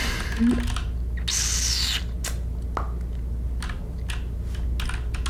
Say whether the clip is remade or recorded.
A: recorded